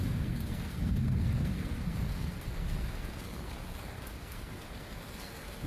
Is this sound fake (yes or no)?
yes